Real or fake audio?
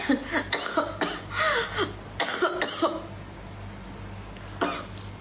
real